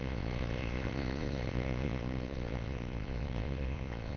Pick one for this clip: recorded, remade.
remade